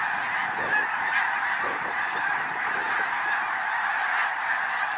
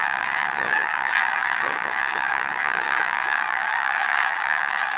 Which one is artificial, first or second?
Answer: second